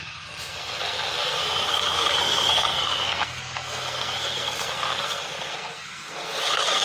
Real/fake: fake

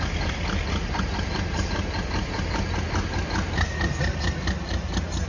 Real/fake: real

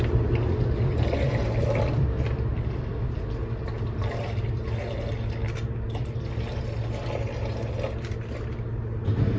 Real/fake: real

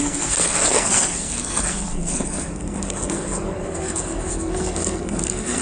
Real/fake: fake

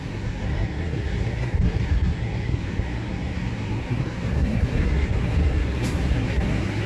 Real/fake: fake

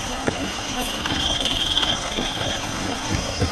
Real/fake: fake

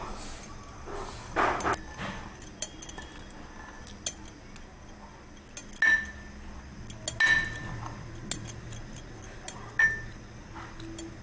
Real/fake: real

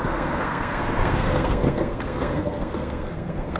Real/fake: fake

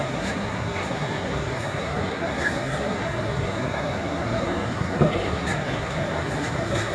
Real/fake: fake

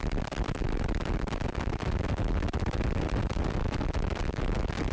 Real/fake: real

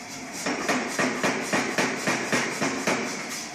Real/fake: real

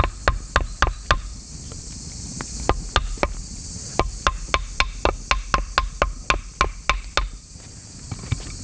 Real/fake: real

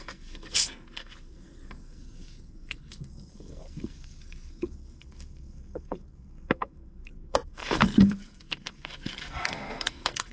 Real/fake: fake